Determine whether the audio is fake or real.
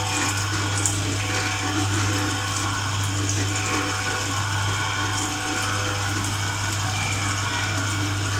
real